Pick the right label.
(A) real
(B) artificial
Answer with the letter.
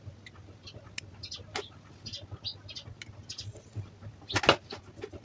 A